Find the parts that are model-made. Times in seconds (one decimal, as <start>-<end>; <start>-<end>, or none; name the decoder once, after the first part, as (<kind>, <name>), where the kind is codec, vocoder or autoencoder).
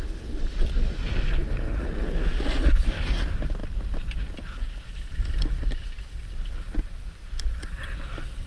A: none